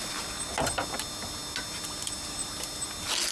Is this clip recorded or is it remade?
recorded